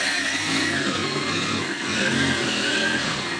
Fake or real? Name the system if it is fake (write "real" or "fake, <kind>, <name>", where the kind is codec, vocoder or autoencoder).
fake, codec, SNAC